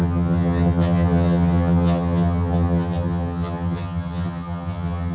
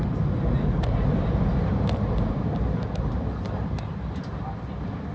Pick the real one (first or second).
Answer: second